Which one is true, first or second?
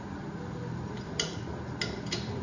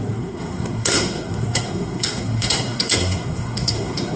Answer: first